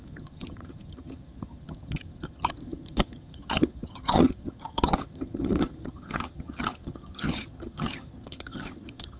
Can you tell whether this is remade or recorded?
remade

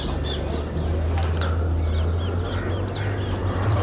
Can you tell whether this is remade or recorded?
recorded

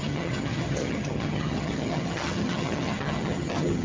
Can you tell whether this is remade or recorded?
remade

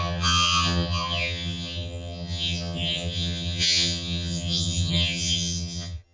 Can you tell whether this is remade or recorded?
remade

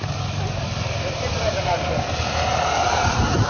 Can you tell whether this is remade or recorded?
recorded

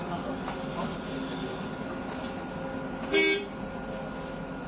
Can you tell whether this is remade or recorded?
recorded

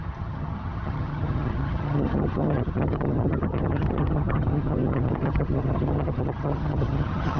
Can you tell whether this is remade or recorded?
remade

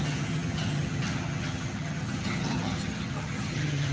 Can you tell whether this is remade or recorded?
remade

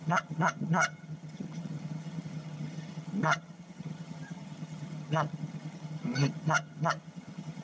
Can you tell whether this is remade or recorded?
remade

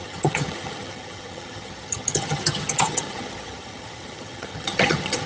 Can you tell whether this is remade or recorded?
remade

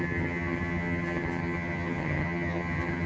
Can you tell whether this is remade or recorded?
remade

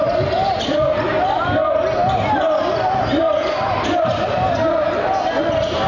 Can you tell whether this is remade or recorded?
recorded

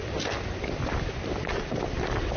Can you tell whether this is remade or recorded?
recorded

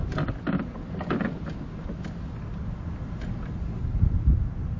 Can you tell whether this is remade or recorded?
recorded